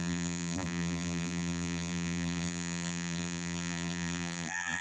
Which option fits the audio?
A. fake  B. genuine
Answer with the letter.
A